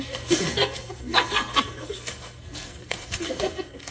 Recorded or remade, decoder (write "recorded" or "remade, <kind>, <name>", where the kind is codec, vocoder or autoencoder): remade, codec, SNAC